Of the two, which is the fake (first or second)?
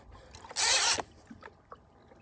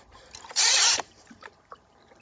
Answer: second